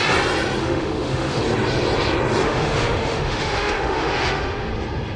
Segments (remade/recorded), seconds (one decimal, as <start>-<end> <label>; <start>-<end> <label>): 0.0-0.6 recorded; 0.6-1.4 remade; 1.4-2.4 recorded; 2.4-4.7 remade; 4.7-5.2 recorded